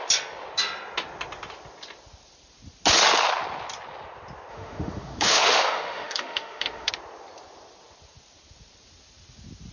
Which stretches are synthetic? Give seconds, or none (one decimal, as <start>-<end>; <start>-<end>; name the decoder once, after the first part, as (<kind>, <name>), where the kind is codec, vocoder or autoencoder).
4.5-6.9 (autoencoder, DAC-VAE)